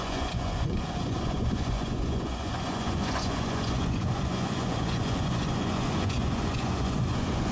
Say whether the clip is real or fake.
fake